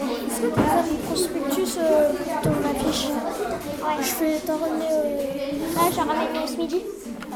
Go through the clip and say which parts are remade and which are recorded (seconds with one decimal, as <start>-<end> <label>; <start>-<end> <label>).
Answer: 0.0-7.4 recorded